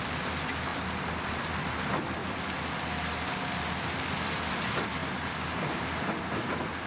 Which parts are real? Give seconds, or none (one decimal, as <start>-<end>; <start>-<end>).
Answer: 0.0-6.9